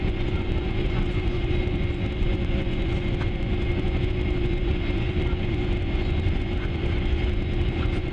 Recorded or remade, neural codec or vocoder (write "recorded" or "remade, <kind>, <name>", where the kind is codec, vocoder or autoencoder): remade, vocoder, Vocos